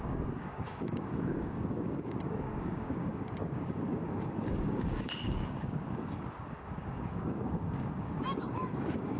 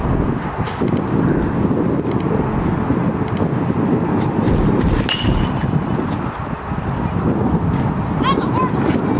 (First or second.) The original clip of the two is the second